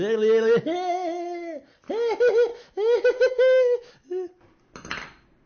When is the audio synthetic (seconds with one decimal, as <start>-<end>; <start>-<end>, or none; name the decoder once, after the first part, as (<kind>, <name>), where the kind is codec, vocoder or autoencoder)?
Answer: 2.5-3.9 (autoencoder, DAC-VAE)